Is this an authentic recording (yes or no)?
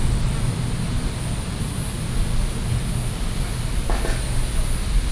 yes